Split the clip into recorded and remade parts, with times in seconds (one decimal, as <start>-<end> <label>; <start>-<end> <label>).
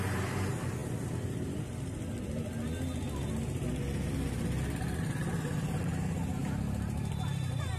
0.0-7.8 recorded